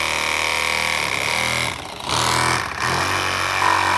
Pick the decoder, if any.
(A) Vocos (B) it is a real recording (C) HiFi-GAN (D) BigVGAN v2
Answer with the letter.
B